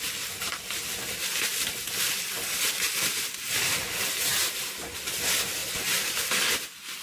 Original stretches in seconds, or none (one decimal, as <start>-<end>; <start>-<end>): 0.0-7.0